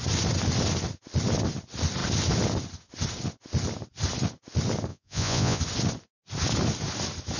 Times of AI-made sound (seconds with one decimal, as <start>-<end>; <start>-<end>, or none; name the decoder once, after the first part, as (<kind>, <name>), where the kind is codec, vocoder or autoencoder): 4.9-5.6 (vocoder, Vocos)